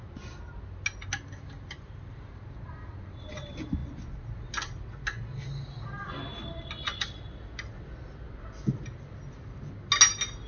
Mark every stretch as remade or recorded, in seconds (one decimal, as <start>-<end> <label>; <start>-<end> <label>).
0.0-10.5 recorded